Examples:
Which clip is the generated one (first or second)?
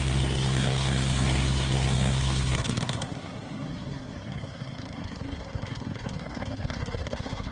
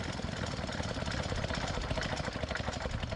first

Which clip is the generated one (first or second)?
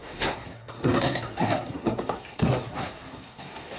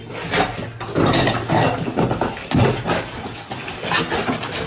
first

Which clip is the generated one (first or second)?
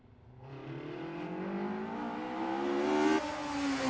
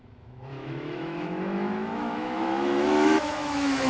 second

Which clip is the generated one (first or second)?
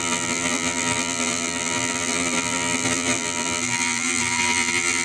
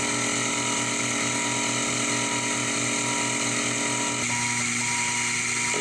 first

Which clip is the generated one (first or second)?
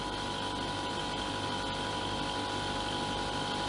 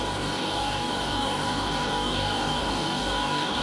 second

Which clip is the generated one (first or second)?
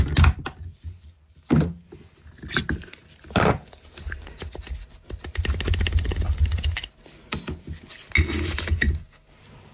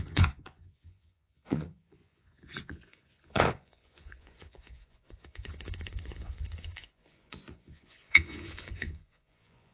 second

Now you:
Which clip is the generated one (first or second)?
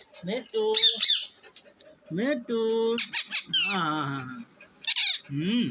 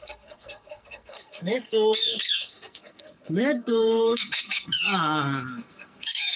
second